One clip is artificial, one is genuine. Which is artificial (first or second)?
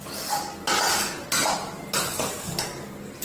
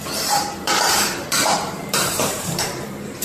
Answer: second